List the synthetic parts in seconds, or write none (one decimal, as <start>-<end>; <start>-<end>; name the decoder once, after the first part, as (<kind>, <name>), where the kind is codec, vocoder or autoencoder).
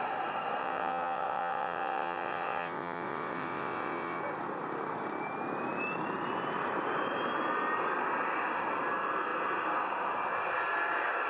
0.6-4.2 (vocoder, WaveNeXt)